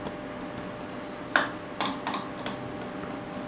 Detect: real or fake real